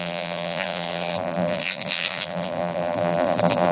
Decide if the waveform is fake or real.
fake